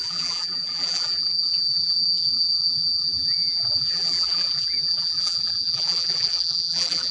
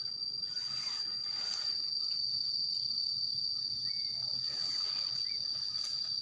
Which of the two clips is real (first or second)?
second